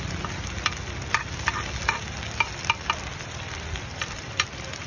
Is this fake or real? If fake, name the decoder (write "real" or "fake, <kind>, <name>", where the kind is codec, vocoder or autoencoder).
real